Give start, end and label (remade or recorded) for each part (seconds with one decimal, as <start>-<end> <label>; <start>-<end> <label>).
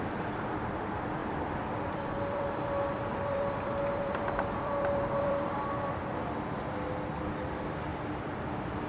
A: 0.0-7.9 remade; 7.9-8.9 recorded